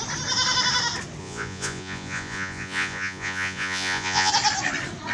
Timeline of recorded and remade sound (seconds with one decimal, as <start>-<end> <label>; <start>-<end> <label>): 0.0-1.2 recorded; 1.2-4.3 remade; 4.3-5.1 recorded